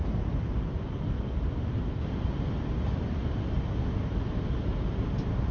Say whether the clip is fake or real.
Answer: real